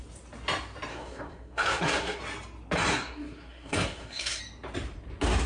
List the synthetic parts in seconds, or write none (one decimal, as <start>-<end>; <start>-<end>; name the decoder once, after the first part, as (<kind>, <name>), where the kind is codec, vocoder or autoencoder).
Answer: 0.9-2.2 (codec, SNAC); 2.9-4.4